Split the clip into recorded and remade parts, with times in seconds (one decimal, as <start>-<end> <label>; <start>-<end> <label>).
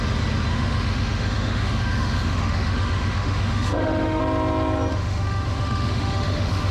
0.0-0.5 recorded; 0.5-4.2 remade; 4.2-4.9 recorded; 4.9-6.7 remade